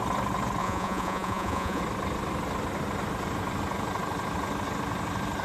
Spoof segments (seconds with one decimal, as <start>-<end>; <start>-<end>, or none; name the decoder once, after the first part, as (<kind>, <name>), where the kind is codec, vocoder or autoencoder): 0.6-1.8 (vocoder, Vocos)